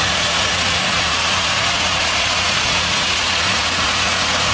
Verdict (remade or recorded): remade